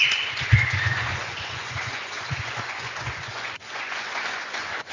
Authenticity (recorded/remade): remade